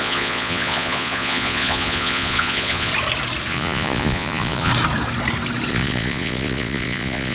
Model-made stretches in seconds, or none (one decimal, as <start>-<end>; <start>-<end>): 0.0-2.9; 3.5-4.7; 5.7-7.3